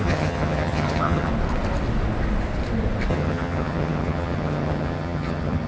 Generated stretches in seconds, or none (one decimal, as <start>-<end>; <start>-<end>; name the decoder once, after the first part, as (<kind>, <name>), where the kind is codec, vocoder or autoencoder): 0.0-1.3 (vocoder, HiFi-GAN); 3.1-5.7